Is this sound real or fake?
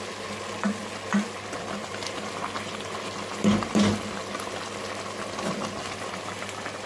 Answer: real